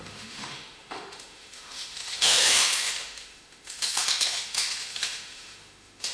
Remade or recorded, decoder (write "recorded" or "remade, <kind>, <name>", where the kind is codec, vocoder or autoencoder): remade, autoencoder, DAC-VAE